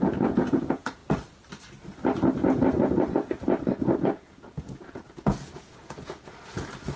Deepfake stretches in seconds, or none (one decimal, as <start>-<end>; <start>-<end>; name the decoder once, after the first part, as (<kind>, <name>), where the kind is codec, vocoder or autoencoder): 0.0-1.0 (vocoder, Vocos); 4.0-7.0